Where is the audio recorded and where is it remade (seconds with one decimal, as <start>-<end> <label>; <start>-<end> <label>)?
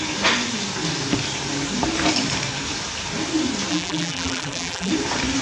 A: 0.0-3.7 recorded; 3.7-4.9 remade; 4.9-5.4 recorded